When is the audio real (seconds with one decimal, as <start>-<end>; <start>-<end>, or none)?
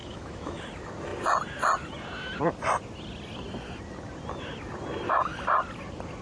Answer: 0.6-6.2